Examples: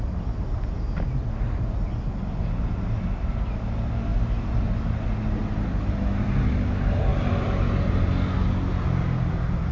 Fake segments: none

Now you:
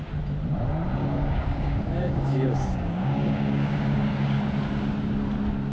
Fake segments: 1.0-4.4 (codec, DAC)

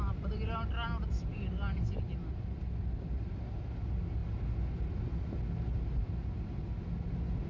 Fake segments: none

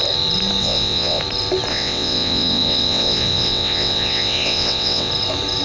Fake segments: 0.6-1.2 (vocoder, WaveNeXt); 1.7-5.1

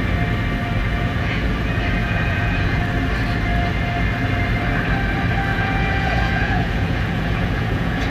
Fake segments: 0.8-1.5 (vocoder, Vocos); 2.0-2.8; 5.5-8.1

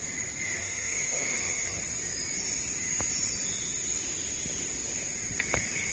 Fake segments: 0.6-1.8 (codec, SNAC)